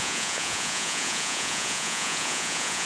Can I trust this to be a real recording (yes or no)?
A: no